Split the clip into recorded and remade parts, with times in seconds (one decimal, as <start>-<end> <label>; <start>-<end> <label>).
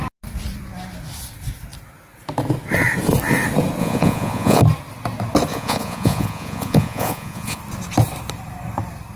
0.0-3.8 recorded; 3.8-4.6 remade; 4.6-5.5 recorded; 5.5-7.6 remade; 7.6-9.2 recorded